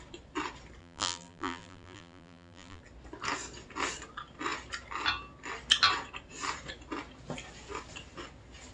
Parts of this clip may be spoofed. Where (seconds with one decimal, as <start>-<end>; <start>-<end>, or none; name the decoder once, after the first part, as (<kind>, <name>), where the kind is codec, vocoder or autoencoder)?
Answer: 0.8-2.8 (vocoder, BigVGAN v2)